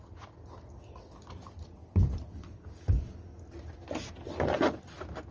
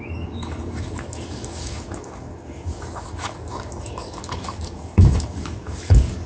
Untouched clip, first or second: first